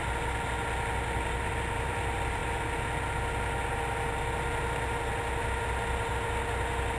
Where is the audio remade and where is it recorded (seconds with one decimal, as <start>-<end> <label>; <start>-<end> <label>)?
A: 0.0-7.0 recorded